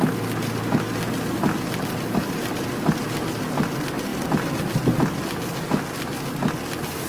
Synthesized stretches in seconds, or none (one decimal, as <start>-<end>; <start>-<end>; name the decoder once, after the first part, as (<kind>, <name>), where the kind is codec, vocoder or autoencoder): none